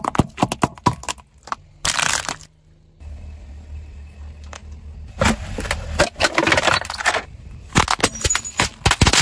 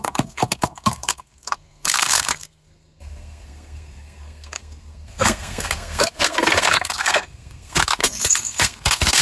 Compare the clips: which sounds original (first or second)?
first